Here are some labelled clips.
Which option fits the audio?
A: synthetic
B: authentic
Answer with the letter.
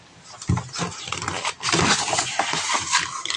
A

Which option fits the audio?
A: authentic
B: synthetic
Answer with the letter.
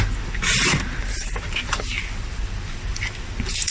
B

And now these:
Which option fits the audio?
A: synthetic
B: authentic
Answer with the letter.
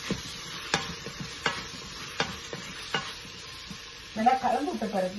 A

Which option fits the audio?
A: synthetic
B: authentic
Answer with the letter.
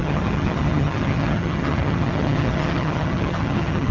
A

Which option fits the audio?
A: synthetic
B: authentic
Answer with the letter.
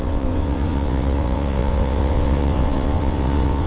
A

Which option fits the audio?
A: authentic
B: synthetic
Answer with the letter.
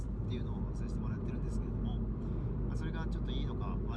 A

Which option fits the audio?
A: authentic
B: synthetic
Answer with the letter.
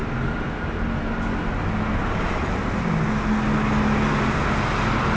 A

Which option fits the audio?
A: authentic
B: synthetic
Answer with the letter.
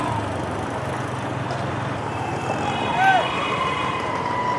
A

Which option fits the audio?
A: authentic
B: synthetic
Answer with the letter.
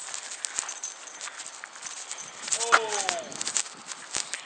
A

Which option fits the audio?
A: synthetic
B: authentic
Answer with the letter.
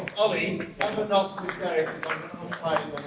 B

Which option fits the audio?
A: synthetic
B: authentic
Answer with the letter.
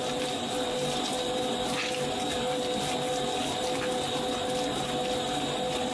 B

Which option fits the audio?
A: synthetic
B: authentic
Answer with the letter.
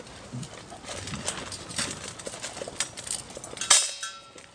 B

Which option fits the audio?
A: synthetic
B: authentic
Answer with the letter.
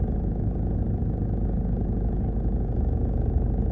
B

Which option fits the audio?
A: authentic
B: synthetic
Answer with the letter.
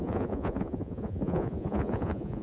B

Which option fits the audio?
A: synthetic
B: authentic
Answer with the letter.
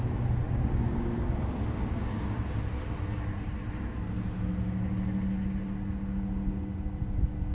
B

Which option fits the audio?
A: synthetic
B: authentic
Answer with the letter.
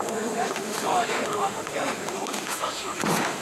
A